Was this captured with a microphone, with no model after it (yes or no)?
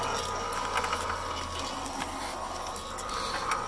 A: yes